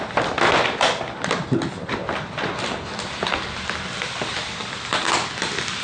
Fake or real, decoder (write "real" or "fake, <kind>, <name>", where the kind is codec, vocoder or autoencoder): real